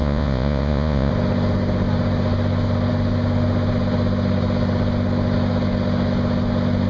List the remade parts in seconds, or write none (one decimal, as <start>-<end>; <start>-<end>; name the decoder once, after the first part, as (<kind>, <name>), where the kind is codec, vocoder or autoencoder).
0.0-1.1 (vocoder, Vocos)